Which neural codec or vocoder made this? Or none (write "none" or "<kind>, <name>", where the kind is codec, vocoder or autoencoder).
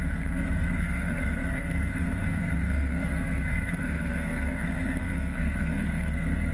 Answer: codec, SNAC